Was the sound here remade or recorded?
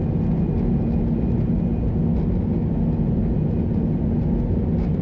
recorded